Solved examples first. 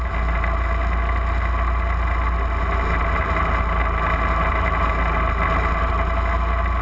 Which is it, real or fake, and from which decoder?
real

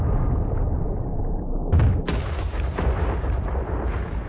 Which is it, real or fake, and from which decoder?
real